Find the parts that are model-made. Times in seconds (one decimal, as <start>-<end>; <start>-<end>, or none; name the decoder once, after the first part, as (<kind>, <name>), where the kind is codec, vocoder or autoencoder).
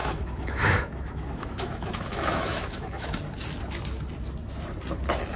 0.0-3.2 (autoencoder, DAC-VAE)